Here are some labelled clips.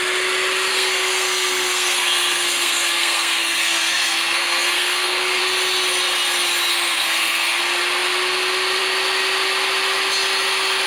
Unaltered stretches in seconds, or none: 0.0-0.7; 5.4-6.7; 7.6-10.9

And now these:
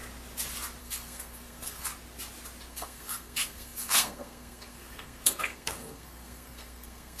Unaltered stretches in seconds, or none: 0.0-0.8; 1.9-2.7

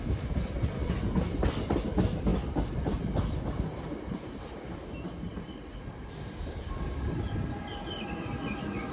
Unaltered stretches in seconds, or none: 0.0-8.9

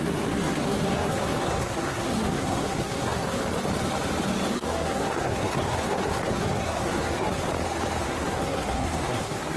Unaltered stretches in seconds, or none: 3.4-4.5; 7.5-8.0

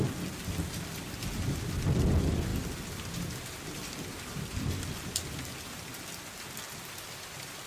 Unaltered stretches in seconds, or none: 0.0-7.7

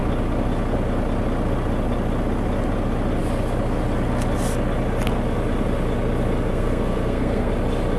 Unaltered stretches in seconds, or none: 0.0-6.5; 7.5-8.0

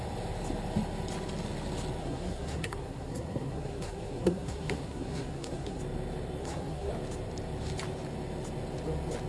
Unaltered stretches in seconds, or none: 0.0-2.0; 5.8-6.4; 6.9-9.3